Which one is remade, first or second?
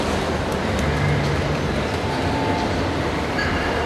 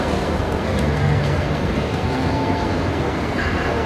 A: second